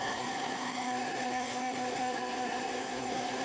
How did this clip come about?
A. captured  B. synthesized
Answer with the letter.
B